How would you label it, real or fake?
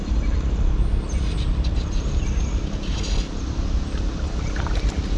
real